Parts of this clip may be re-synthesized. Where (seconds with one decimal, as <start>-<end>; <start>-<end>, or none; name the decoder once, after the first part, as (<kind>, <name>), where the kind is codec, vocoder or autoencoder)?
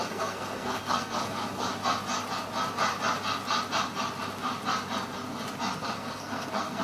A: 0.0-1.7 (codec, SNAC); 5.8-6.8